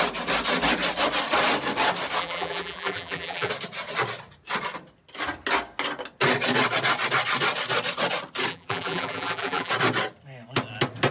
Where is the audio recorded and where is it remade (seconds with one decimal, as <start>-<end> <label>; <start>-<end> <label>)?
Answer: 0.0-2.2 recorded; 2.2-3.5 remade; 3.5-8.5 recorded; 8.5-9.7 remade; 9.7-11.1 recorded